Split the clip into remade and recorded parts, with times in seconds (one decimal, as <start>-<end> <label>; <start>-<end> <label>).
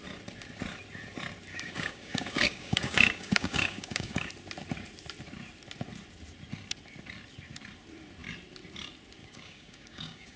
0.0-1.5 recorded; 1.5-4.3 remade; 4.3-9.2 recorded; 9.2-10.4 remade